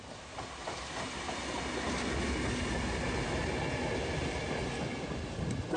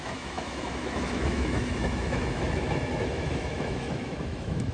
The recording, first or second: first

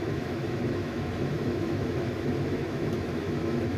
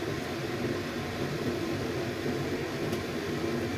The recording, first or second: second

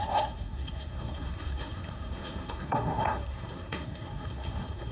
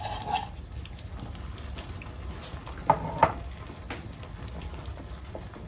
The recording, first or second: second